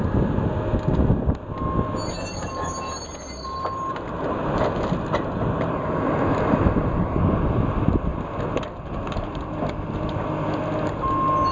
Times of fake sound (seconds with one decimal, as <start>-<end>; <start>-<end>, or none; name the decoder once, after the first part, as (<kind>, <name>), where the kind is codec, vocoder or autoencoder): none